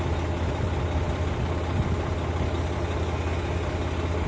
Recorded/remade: recorded